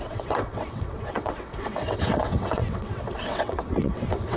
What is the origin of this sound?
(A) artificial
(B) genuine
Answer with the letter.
A